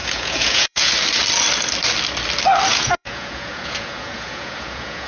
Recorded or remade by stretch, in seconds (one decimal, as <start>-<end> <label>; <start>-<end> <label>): 0.0-0.9 remade; 0.9-2.7 recorded; 2.7-5.1 remade